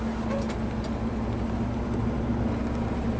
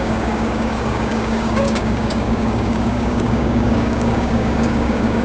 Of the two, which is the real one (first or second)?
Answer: first